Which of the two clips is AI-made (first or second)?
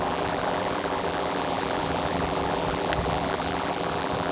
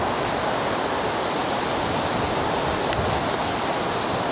first